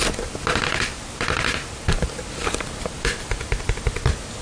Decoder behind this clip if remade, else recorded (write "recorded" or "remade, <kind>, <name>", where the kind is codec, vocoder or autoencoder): recorded